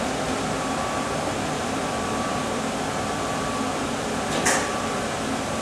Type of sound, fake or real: fake